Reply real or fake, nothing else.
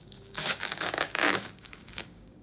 fake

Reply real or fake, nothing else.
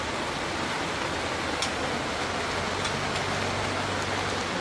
real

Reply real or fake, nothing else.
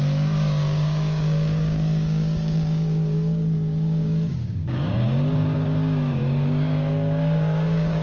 fake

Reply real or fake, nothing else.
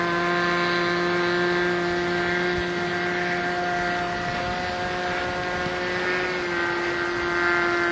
real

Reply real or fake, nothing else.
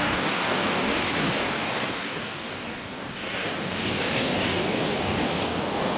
fake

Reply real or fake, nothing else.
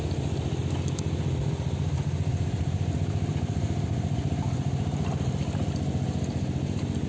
real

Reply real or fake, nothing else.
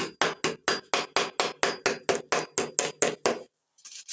real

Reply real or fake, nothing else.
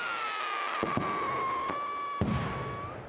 real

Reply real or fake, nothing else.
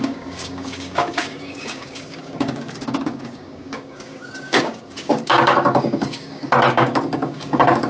fake